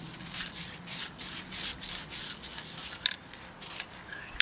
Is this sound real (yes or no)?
yes